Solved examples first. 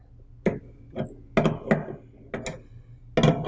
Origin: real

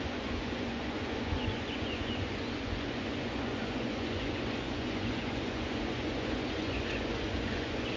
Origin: fake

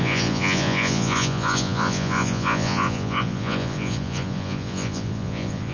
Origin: fake